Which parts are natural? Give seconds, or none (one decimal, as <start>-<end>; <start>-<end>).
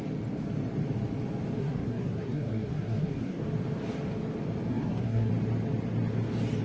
0.0-1.6; 3.4-4.7; 5.3-6.6